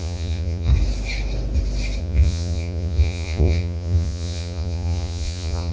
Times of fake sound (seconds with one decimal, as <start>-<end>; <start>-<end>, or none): 0.0-0.7; 2.0-5.7